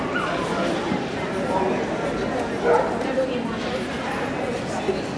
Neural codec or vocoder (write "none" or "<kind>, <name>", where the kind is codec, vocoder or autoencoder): none